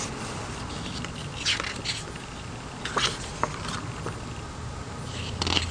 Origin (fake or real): real